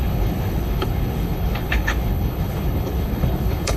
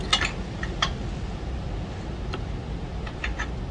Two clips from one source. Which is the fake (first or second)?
first